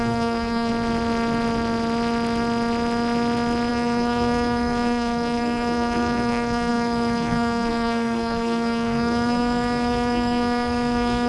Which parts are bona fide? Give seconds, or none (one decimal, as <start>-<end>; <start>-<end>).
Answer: 0.7-3.7